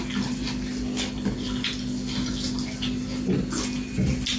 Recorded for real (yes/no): yes